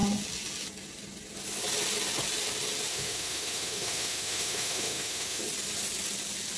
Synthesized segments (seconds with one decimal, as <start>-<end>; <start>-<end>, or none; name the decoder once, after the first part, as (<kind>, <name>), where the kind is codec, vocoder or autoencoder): 2.9-5.4 (autoencoder, DAC-VAE)